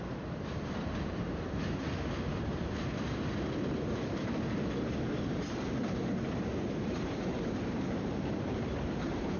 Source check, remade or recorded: remade